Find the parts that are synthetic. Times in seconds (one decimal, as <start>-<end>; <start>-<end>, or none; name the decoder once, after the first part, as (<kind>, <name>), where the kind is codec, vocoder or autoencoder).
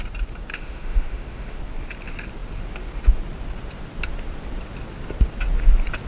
0.5-1.6 (autoencoder, DAC-VAE)